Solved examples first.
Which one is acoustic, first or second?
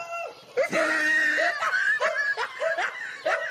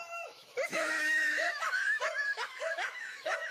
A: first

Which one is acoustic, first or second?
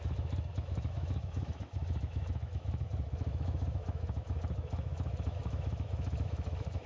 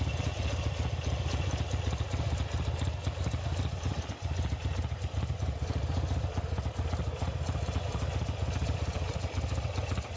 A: second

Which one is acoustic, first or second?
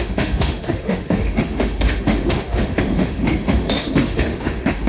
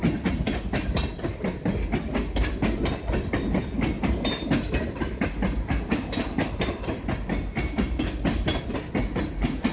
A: second